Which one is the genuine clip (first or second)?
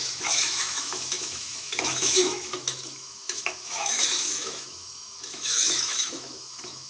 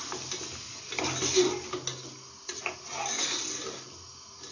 second